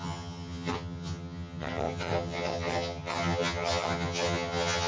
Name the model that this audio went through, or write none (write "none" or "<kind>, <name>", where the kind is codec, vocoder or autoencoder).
vocoder, HiFi-GAN